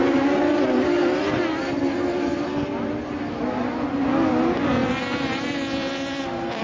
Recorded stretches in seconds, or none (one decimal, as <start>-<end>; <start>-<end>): 0.0-6.6